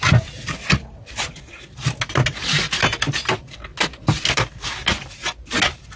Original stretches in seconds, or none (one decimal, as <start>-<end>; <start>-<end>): 0.0-6.0